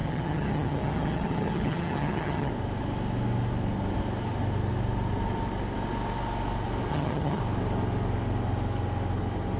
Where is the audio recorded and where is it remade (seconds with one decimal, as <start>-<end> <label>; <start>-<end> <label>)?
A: 0.0-2.5 remade; 2.5-6.9 recorded; 6.9-7.4 remade; 7.4-9.6 recorded

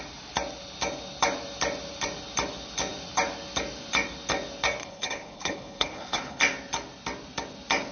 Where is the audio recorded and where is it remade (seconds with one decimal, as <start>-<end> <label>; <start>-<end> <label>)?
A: 0.0-4.8 recorded; 4.8-6.4 remade; 6.4-7.9 recorded

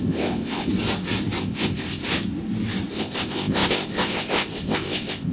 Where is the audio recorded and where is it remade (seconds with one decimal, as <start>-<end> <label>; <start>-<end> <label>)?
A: 0.0-0.7 remade; 0.7-1.4 recorded; 1.4-2.0 remade; 2.0-2.9 recorded; 2.9-5.3 remade